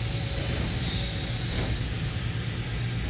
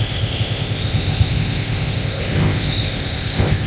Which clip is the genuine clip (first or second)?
first